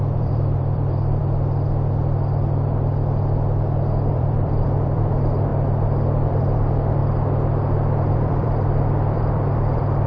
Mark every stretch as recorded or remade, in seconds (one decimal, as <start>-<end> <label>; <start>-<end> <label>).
0.0-1.2 remade; 1.2-4.1 recorded; 4.1-5.5 remade; 5.5-6.3 recorded; 6.3-7.0 remade; 7.0-8.1 recorded; 8.1-10.1 remade